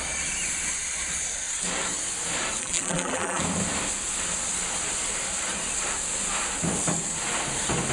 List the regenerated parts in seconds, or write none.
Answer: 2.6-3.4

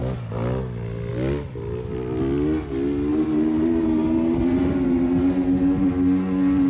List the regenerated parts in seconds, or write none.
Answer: 3.1-4.6

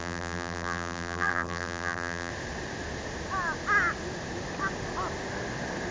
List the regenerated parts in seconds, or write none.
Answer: 0.0-2.3

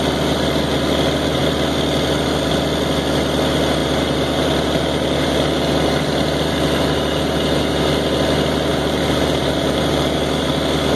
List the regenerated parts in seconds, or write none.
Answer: 3.8-7.9; 8.7-10.5